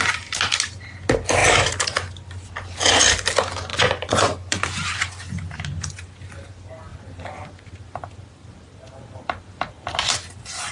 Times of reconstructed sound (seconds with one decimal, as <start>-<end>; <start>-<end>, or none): 3.7-4.6